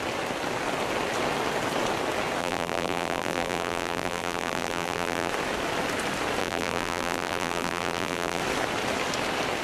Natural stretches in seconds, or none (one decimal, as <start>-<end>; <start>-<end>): 0.0-2.4; 5.3-6.4; 8.4-9.6